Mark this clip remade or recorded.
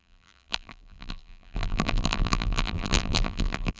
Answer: remade